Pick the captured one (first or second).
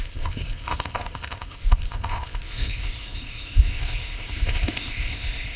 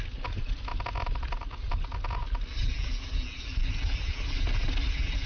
second